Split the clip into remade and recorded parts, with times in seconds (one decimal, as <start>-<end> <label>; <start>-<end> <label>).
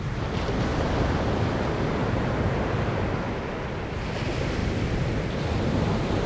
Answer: 0.0-2.0 recorded; 2.0-3.0 remade; 3.0-6.3 recorded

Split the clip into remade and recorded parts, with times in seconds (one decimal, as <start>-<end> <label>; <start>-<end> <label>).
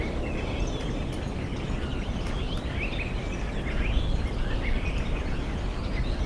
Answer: 0.0-6.3 recorded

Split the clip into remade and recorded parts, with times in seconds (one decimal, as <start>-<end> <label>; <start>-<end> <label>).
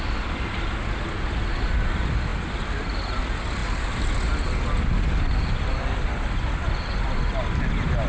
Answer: 0.0-8.1 recorded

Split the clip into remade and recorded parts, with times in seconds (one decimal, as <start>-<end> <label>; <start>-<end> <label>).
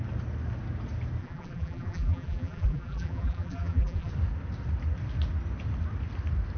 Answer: 0.0-1.2 recorded; 1.2-4.1 remade; 4.1-6.6 recorded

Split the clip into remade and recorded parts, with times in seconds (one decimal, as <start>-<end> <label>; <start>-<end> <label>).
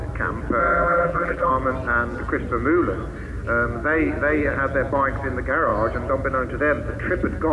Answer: 0.0-0.6 recorded; 0.6-1.5 remade; 1.5-7.5 recorded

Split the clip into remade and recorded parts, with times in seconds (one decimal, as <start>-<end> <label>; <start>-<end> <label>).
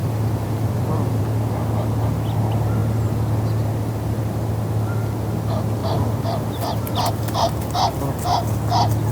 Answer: 0.0-1.2 remade; 1.2-5.8 recorded; 5.8-7.1 remade; 7.1-9.1 recorded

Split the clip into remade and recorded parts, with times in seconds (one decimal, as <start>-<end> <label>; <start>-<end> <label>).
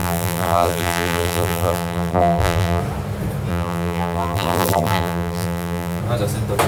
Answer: 0.0-2.8 remade; 2.8-3.5 recorded; 3.5-6.0 remade; 6.0-6.7 recorded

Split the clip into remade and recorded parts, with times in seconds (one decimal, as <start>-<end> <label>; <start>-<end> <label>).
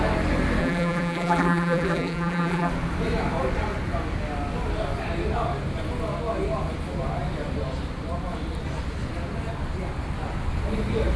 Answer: 0.0-0.6 recorded; 0.6-2.7 remade; 2.7-11.2 recorded